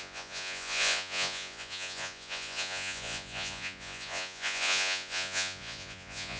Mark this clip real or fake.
fake